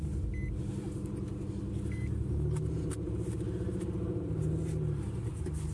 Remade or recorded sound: recorded